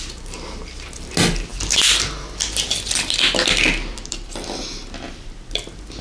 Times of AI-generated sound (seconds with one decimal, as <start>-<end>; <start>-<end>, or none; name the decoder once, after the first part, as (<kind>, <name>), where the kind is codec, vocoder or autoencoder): 3.9-4.6 (vocoder, BigVGAN v2)